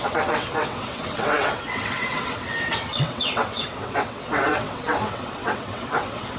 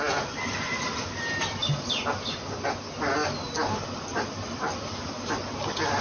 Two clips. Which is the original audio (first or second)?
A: second